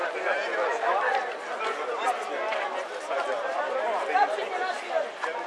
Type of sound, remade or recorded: recorded